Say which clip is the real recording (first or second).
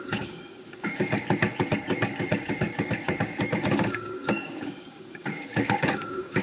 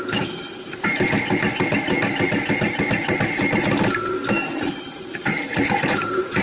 second